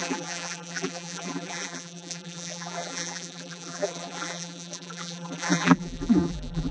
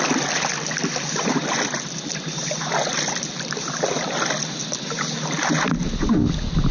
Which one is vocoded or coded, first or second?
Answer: first